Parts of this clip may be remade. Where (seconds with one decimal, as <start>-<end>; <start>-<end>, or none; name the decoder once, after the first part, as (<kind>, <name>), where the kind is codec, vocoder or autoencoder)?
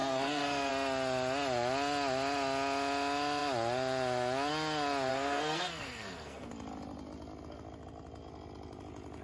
0.0-0.7 (codec, SNAC); 5.1-6.5